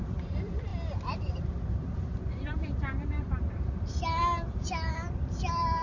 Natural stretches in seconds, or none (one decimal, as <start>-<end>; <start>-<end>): 0.7-1.3